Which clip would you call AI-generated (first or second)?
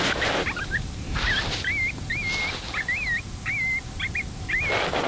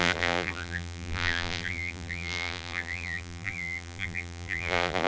second